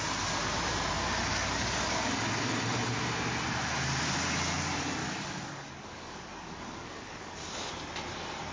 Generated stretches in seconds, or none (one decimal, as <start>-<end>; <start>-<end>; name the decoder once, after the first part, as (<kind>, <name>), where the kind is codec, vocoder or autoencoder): 1.3-2.1 (codec, DAC); 5.0-7.5